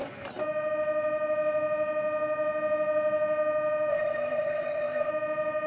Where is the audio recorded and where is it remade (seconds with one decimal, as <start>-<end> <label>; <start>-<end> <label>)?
0.0-3.9 recorded; 3.9-5.1 remade; 5.1-5.7 recorded